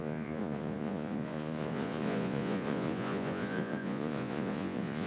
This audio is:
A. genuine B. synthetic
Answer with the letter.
B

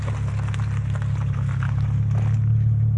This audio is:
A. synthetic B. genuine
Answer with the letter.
B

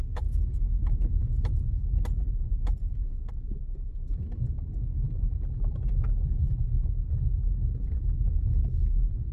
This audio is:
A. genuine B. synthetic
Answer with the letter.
A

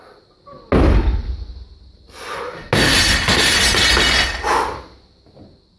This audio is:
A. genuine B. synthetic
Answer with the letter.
A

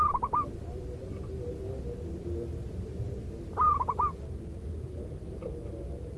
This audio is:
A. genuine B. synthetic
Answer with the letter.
B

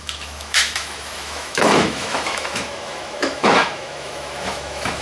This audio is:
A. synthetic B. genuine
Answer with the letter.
A